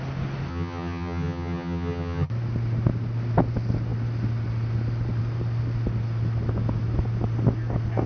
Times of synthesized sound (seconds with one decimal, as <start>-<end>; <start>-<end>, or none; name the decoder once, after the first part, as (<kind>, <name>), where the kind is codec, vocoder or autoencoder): 0.5-2.3 (vocoder, HiFi-GAN)